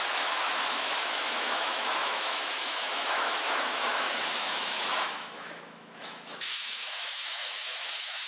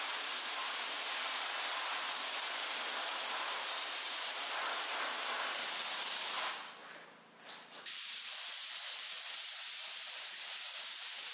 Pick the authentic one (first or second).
second